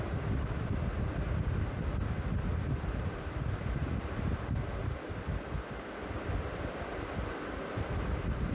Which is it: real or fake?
real